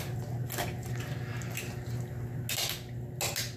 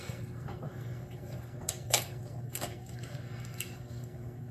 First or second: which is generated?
second